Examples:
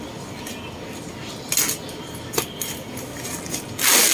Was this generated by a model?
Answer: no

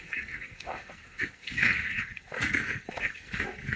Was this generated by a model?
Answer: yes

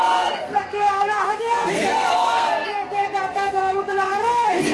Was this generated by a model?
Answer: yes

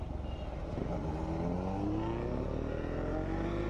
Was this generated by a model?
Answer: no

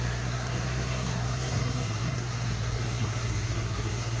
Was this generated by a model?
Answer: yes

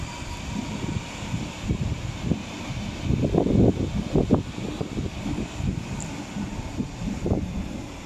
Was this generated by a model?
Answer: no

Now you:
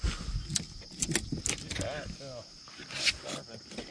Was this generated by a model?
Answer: no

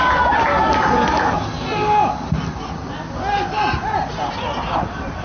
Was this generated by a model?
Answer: no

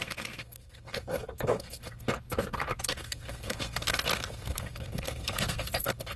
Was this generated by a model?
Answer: yes